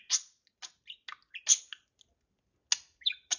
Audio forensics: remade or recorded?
recorded